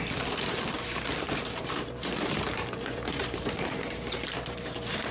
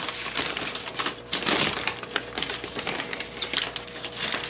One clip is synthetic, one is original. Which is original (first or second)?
second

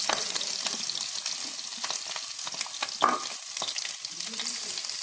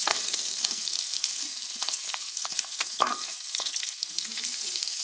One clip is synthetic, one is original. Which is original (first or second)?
first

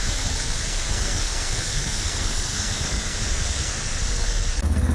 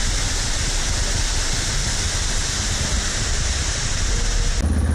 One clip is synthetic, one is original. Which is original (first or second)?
second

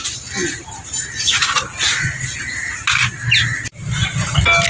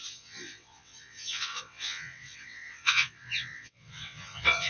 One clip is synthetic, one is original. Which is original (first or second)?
first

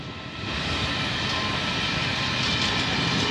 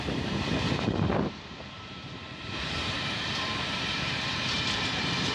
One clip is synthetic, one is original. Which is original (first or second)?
first